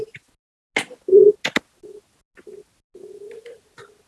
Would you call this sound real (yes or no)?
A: yes